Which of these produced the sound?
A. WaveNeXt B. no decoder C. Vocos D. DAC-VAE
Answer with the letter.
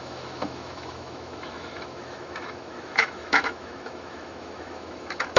D